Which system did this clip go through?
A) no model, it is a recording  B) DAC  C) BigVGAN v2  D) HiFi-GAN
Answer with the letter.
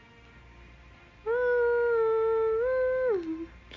A